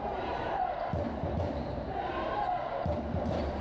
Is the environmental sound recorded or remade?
remade